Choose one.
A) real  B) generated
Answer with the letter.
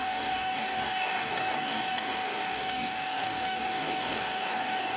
B